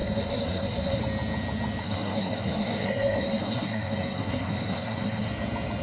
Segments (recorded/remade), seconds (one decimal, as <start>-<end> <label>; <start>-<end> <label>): 0.0-1.0 remade; 1.0-1.8 recorded; 1.8-5.3 remade; 5.3-5.8 recorded